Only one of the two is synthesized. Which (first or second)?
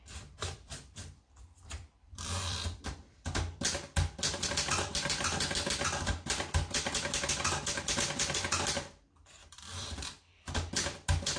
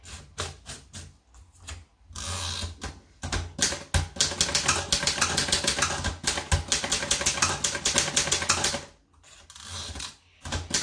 first